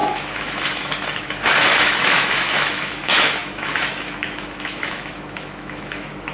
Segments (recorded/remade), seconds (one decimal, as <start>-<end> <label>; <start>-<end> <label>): 0.0-6.3 remade